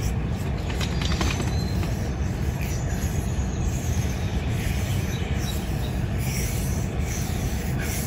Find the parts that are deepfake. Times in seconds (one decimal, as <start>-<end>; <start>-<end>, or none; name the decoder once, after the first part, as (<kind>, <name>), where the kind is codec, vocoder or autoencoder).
4.3-5.3 (vocoder, BigVGAN v2)